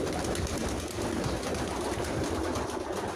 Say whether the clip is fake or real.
real